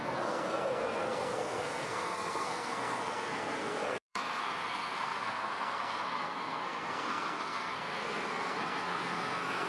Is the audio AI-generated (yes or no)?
yes